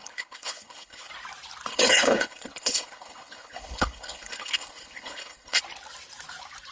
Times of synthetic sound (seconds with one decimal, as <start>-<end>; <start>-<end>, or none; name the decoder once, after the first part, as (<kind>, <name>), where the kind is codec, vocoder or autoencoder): 0.0-1.1 (codec, HILCodec); 1.7-5.6